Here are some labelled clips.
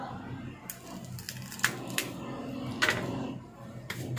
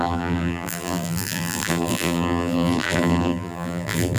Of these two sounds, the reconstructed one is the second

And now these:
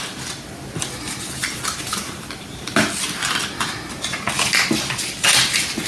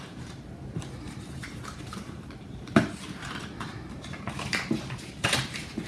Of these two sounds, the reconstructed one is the second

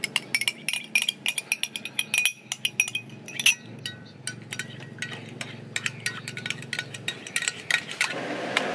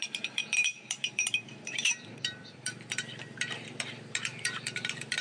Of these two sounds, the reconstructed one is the second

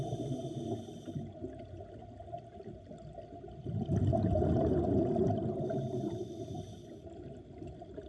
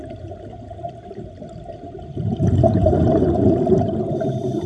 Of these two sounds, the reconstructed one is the second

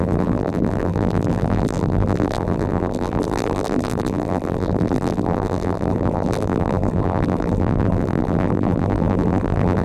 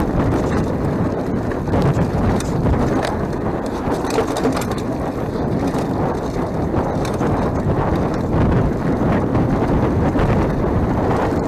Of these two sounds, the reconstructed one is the first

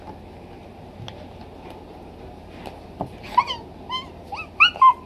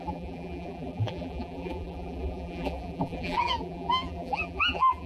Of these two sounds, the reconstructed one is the second